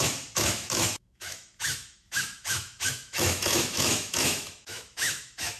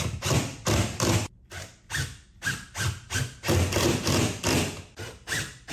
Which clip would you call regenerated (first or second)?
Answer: first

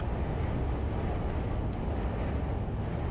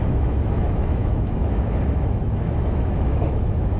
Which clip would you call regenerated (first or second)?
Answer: second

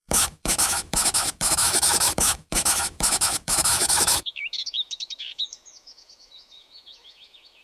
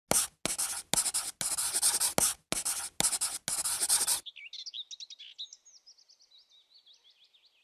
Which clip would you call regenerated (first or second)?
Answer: first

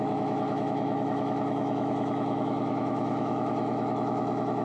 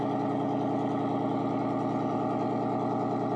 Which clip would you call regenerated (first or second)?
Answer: first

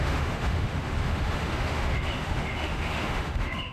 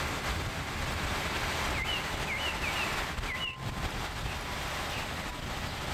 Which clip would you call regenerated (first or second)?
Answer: first